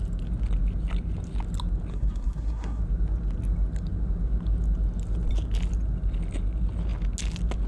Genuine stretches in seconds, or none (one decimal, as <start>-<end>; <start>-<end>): 0.0-1.9; 2.8-7.7